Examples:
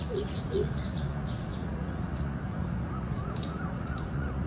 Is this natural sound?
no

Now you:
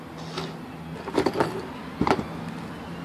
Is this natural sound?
yes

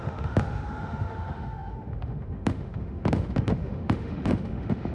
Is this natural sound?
no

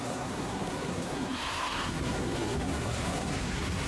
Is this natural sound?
no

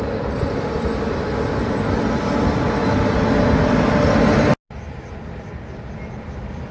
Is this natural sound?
yes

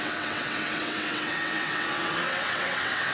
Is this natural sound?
no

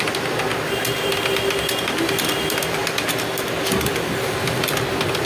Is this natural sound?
yes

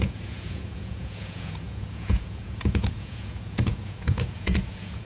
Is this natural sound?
no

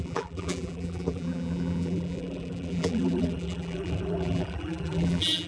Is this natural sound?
no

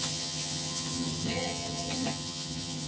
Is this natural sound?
no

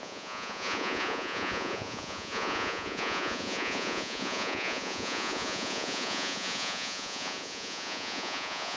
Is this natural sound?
no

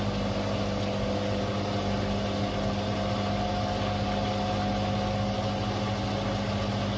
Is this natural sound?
yes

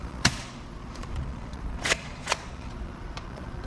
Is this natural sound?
no